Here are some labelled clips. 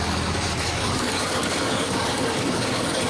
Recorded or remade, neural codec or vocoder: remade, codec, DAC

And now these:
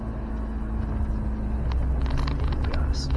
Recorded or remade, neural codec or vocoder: recorded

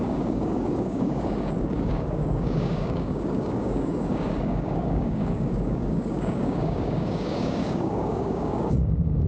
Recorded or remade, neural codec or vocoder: remade, codec, DAC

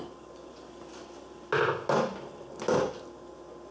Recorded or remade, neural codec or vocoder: recorded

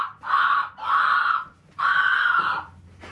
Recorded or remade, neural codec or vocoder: recorded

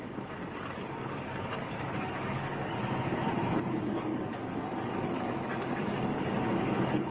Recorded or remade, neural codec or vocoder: remade, codec, DAC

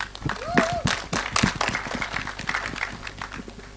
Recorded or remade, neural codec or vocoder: recorded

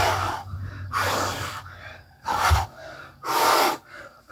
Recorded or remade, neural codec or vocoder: remade, codec, DAC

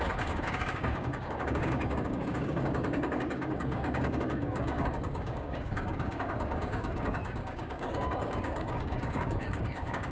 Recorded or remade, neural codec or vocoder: remade, codec, DAC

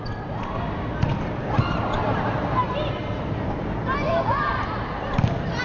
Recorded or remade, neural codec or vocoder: recorded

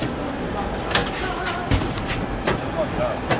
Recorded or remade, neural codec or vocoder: recorded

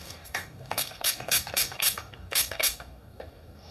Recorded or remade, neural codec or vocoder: remade, codec, DAC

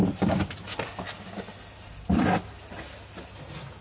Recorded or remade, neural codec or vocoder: recorded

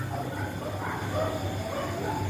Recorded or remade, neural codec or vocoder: recorded